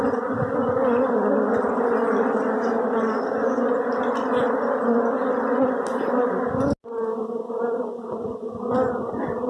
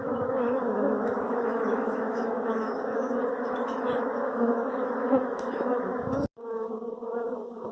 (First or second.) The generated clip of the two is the second